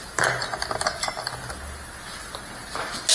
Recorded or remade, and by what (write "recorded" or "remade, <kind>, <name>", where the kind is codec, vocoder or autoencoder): recorded